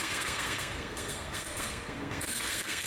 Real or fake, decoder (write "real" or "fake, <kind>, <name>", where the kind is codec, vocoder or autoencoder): fake, codec, SNAC